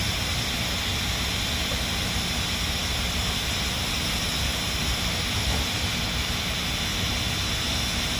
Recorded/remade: recorded